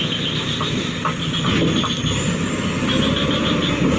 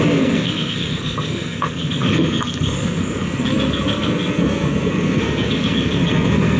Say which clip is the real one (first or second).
first